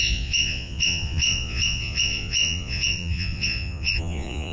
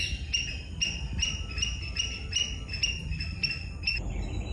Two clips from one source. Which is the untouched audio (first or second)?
second